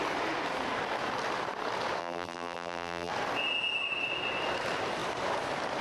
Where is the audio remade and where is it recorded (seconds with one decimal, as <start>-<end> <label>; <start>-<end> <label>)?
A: 0.0-2.0 recorded; 2.0-3.1 remade; 3.1-5.8 recorded